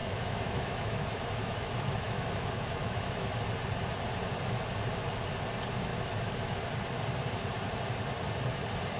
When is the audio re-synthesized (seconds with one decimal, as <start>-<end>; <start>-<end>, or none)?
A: 0.0-3.3; 5.9-6.7